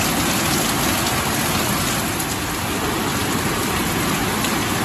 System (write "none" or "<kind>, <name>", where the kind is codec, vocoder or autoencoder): none